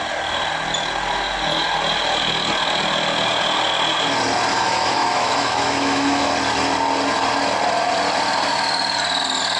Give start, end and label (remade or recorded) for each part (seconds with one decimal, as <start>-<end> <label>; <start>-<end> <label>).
0.0-4.5 recorded; 4.5-6.3 remade; 6.3-9.6 recorded